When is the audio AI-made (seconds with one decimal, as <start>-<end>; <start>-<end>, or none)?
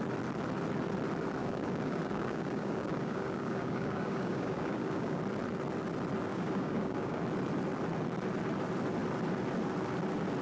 1.4-5.2; 6.3-7.2